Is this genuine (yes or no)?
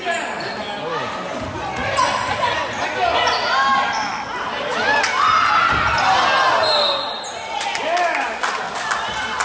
yes